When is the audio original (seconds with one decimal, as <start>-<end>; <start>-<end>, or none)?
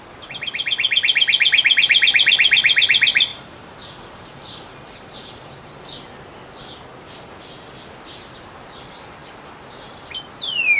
0.0-3.3; 5.8-10.8